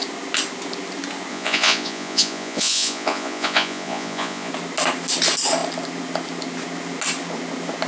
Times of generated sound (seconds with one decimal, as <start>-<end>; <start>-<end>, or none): 1.3-4.5